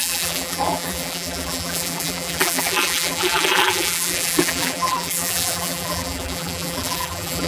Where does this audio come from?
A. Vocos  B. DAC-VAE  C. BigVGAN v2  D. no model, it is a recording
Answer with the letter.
C